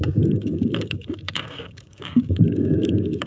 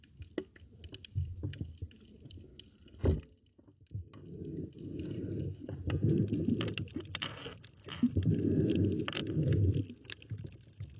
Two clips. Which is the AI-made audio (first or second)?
first